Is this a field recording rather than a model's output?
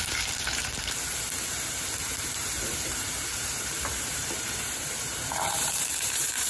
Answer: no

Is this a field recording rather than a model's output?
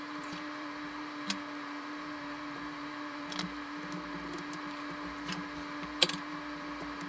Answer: no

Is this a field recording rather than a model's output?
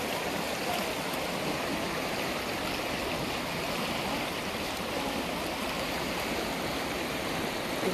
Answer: yes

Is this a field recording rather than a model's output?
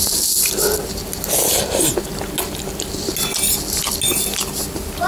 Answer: yes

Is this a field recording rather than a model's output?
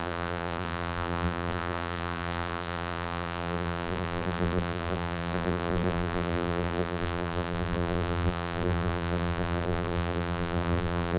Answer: no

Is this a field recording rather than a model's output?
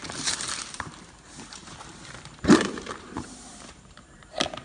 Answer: no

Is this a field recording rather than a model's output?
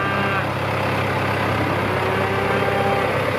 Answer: yes